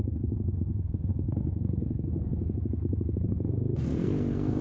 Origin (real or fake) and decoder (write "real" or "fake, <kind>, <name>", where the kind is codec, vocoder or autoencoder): fake, codec, SNAC